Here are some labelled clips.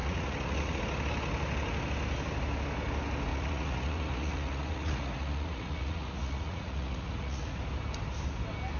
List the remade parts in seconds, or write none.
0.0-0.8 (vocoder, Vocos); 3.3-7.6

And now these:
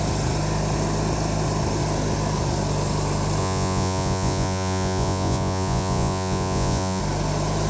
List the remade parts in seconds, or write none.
3.4-7.0 (vocoder, Vocos)